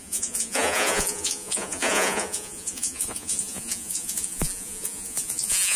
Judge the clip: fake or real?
fake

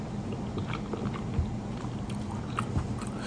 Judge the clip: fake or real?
real